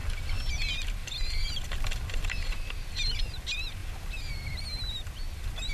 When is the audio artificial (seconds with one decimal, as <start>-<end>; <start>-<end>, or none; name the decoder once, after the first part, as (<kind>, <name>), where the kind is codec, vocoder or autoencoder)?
0.0-0.6 (vocoder, BigVGAN v2); 1.0-3.4; 3.8-4.6